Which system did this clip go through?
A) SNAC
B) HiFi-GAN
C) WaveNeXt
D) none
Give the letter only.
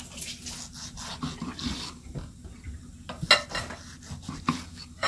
D